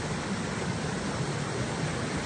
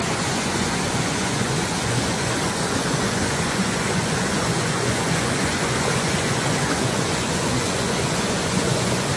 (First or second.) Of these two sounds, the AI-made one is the second